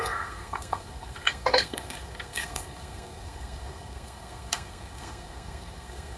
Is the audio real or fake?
fake